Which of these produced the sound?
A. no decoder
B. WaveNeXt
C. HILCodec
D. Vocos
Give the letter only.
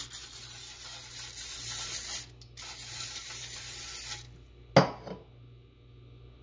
A